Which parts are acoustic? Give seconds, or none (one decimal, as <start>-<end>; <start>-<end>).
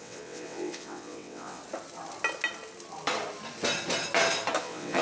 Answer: 1.6-4.6